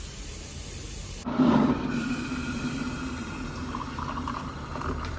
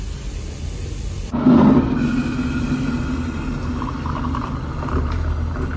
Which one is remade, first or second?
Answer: first